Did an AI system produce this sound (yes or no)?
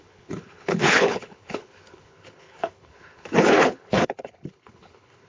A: yes